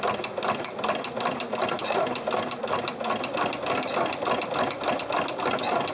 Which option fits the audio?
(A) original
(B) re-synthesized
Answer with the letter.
A